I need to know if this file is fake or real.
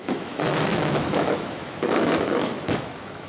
fake